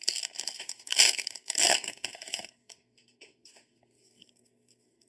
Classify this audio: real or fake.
fake